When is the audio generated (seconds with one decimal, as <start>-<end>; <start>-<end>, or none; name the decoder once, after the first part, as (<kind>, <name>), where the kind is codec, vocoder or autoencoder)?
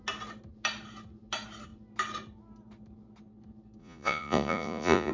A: 3.8-5.1 (vocoder, Vocos)